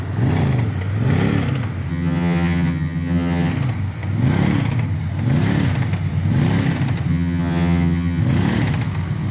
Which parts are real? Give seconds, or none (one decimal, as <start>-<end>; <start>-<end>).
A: 0.0-1.9; 3.5-7.1; 8.2-9.3